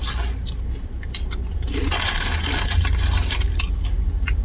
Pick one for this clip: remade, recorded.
recorded